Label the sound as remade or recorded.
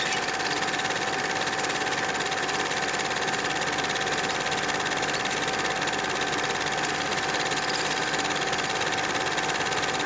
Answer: recorded